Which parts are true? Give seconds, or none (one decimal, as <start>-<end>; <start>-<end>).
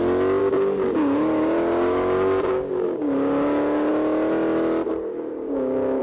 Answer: 0.0-0.4; 3.9-5.3